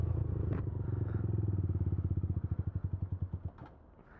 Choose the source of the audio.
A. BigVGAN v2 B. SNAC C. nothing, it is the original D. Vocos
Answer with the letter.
C